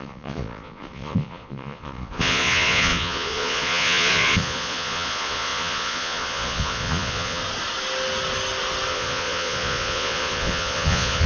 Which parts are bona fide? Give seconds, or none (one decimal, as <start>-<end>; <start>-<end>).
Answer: 7.4-8.9